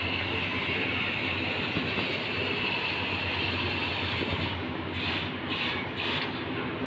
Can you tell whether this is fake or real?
real